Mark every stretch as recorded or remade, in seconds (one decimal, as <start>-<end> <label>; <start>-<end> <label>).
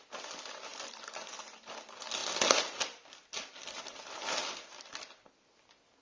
0.0-6.0 recorded